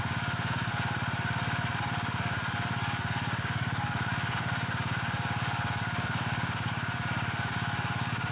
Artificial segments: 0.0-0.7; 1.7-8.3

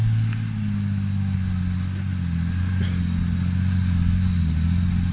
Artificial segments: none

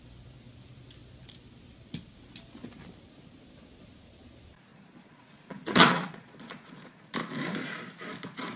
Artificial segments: 4.7-7.0

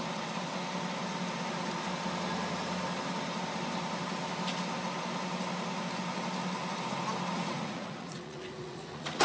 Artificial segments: 7.3-9.2

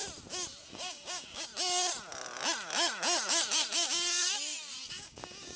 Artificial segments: 0.7-1.5; 4.9-5.6

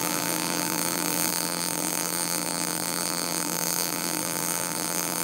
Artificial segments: 0.0-5.2

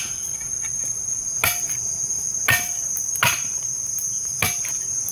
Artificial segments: none

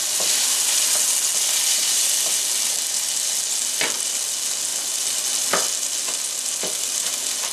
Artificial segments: none